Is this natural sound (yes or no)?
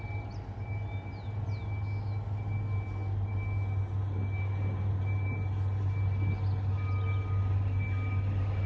yes